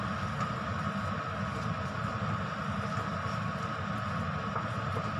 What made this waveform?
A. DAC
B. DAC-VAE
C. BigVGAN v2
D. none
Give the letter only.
D